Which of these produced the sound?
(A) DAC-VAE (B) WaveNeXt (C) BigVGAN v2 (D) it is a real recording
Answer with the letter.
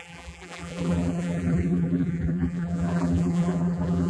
C